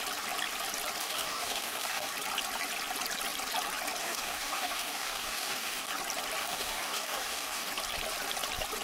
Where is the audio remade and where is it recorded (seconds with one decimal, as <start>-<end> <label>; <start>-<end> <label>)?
0.0-1.0 recorded; 1.0-2.1 remade; 2.1-4.0 recorded; 4.0-5.9 remade; 5.9-6.4 recorded; 6.4-7.7 remade; 7.7-8.8 recorded